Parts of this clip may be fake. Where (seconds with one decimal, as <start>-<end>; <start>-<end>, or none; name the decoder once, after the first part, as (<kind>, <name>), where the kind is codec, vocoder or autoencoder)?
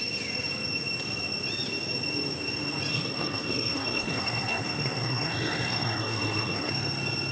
2.9-6.7 (codec, SNAC)